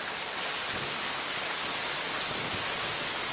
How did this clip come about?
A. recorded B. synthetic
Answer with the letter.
A